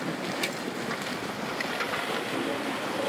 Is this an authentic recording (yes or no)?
yes